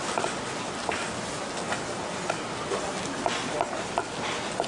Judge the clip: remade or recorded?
recorded